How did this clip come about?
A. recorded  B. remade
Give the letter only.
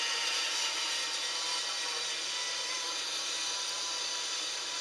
A